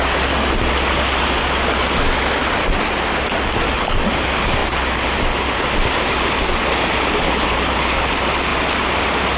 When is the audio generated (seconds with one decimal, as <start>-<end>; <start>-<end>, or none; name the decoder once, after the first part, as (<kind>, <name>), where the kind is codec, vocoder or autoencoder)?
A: none